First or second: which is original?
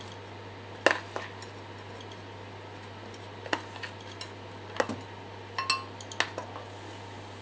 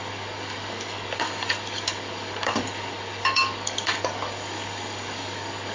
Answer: first